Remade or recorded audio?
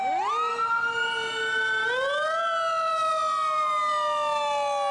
recorded